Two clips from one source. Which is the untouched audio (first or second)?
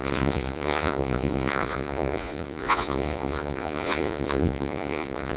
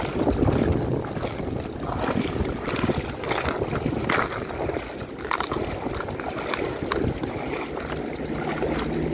second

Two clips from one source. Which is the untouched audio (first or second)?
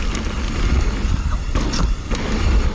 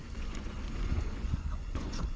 first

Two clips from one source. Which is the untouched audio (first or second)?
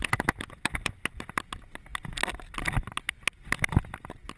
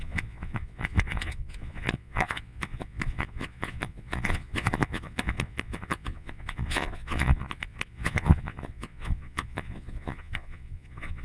first